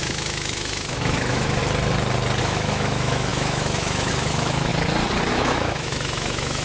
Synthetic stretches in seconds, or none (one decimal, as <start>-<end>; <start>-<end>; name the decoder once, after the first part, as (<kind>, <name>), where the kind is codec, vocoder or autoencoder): 0.0-1.6 (autoencoder, DAC-VAE); 2.4-4.7; 5.3-6.6